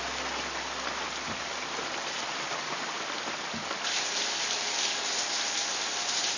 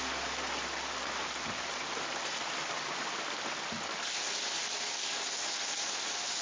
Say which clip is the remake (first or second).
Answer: first